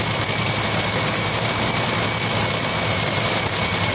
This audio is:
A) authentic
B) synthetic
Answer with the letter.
A